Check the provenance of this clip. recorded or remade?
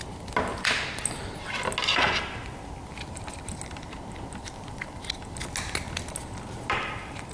recorded